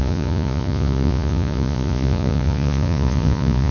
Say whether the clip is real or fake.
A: fake